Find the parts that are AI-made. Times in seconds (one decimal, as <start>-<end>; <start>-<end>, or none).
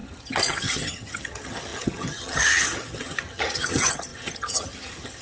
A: 0.0-5.2